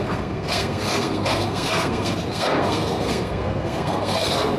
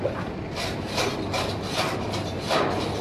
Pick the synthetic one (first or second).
first